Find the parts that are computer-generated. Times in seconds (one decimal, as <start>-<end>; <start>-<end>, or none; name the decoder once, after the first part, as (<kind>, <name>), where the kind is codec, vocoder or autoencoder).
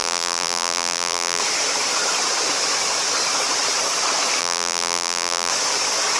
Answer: 0.0-1.4 (vocoder, BigVGAN v2); 4.4-5.5